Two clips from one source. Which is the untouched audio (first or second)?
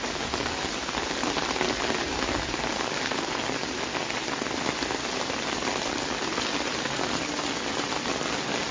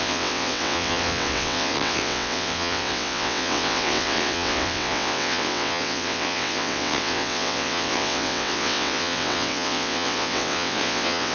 first